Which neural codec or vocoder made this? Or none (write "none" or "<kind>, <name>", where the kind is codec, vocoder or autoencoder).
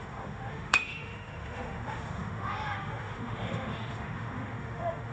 autoencoder, DAC-VAE